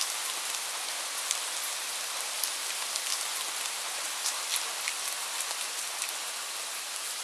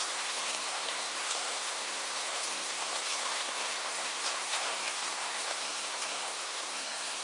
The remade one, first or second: second